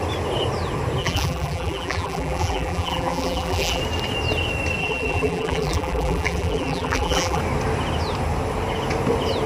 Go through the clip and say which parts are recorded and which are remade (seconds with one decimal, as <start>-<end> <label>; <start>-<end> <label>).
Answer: 0.0-1.0 recorded; 1.0-3.8 remade; 3.8-4.8 recorded; 4.8-7.4 remade; 7.4-9.5 recorded